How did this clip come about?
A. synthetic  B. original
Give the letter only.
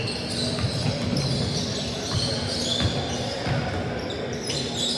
B